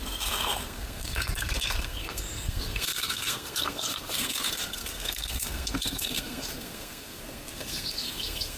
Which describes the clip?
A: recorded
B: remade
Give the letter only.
B